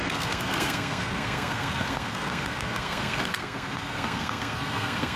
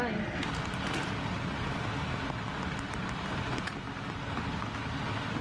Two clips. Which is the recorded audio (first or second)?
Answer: second